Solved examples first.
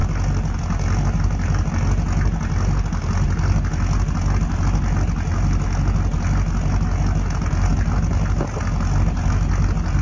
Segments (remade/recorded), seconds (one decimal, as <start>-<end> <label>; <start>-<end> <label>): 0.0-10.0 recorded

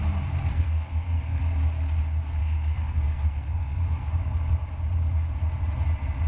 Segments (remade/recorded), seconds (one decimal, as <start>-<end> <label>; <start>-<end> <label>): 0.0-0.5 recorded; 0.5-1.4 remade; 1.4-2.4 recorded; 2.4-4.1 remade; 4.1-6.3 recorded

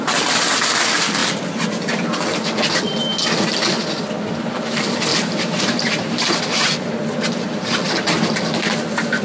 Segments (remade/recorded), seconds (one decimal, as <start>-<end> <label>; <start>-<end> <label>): 0.0-5.1 recorded; 5.1-6.4 remade; 6.4-9.2 recorded

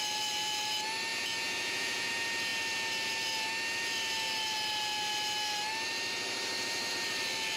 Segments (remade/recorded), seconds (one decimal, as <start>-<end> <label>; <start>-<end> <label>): 0.0-1.1 recorded; 1.1-2.1 remade; 2.1-7.6 recorded